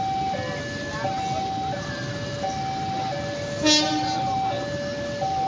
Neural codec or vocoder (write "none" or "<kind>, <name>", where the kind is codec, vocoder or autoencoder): none